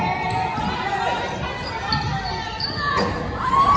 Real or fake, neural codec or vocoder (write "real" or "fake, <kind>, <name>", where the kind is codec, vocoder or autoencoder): real